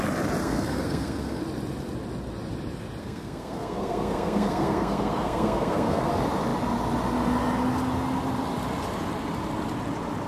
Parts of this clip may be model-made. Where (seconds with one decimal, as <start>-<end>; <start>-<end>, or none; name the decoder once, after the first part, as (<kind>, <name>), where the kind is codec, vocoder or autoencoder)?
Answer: 0.4-1.4 (codec, SNAC); 3.0-6.1